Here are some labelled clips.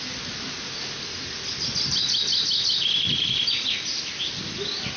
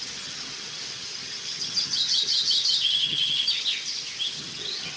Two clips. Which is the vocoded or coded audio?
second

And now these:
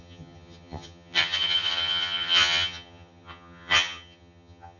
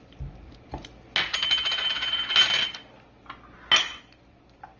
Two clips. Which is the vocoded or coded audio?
first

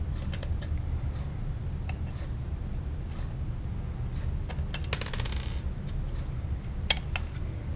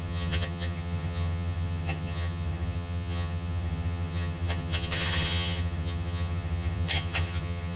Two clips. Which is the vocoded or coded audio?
second